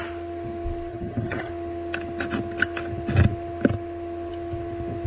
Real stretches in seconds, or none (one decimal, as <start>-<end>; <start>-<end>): 0.0-0.9; 1.5-5.1